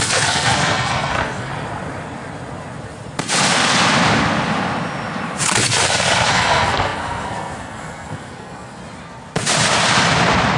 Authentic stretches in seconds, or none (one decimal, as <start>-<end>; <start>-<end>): 1.5-6.3; 8.8-10.6